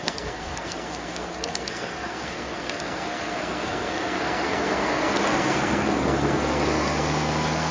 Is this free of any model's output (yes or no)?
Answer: no